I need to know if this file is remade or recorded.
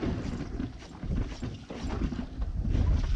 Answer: recorded